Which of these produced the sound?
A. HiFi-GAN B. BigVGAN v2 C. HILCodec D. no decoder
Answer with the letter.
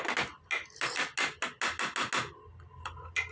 D